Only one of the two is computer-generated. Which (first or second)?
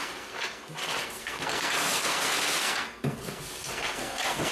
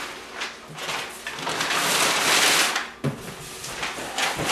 first